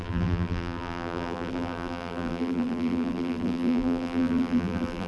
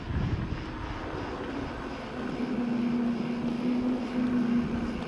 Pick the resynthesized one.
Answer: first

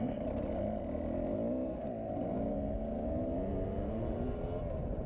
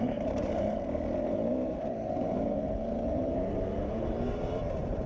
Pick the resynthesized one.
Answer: second